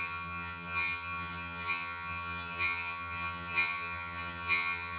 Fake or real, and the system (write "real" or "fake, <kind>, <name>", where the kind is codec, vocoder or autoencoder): fake, vocoder, HiFi-GAN